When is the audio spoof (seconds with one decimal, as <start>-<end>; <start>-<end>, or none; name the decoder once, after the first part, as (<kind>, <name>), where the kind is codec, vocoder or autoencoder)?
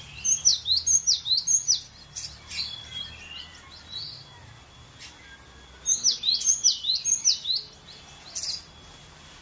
none